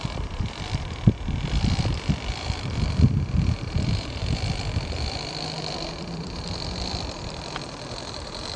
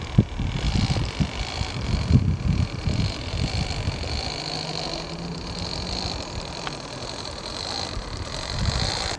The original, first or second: second